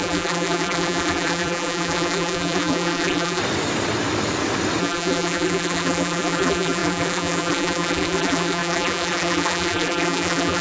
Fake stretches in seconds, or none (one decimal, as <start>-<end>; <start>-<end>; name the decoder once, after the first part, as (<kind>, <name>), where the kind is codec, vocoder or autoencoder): 0.0-3.4 (vocoder, BigVGAN v2); 4.8-10.6

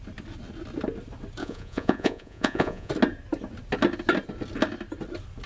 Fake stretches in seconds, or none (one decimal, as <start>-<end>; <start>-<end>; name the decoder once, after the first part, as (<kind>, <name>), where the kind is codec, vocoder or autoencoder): 1.4-2.9 (vocoder, Vocos)

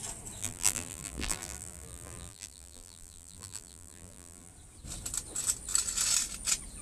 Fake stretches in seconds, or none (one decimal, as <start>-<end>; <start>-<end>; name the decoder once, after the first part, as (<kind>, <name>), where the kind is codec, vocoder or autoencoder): 0.4-4.5 (vocoder, BigVGAN v2)